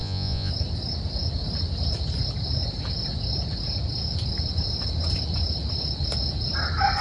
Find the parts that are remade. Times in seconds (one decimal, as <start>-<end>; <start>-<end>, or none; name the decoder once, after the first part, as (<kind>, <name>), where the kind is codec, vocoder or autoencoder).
0.0-0.5 (vocoder, Vocos)